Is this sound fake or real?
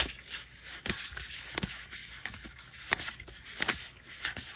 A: fake